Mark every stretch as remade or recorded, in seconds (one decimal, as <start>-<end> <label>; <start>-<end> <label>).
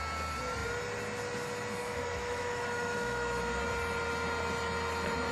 0.0-1.8 recorded; 1.8-3.4 remade; 3.4-5.3 recorded